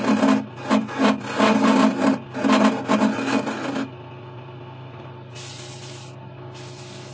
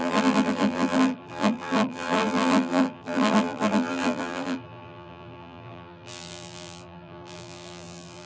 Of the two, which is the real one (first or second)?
first